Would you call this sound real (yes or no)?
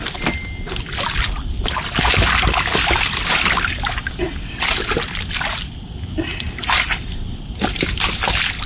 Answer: yes